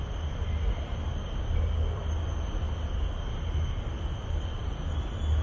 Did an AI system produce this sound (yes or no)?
no